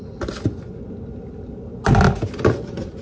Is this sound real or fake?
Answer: real